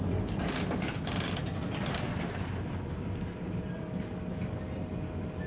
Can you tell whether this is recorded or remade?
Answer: recorded